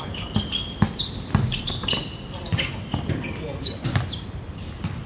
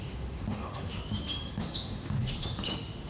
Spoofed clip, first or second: second